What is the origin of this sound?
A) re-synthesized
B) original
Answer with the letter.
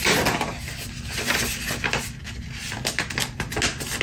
B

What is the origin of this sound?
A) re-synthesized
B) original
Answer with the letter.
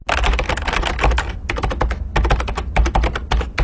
B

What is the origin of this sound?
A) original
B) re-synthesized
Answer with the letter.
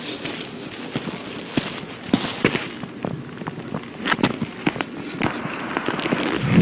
A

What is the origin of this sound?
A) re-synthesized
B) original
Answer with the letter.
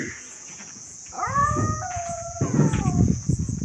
A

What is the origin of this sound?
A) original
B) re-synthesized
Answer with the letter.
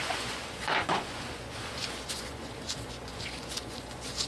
B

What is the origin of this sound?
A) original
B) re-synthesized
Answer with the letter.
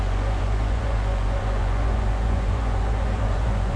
B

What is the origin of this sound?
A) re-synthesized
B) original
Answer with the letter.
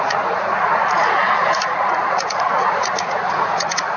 A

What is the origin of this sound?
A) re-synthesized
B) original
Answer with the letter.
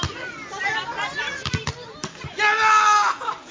B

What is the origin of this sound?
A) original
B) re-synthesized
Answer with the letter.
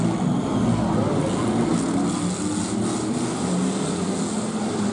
A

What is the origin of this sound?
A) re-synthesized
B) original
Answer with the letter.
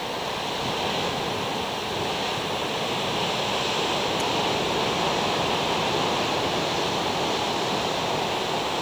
B